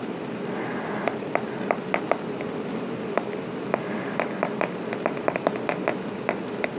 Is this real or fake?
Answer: real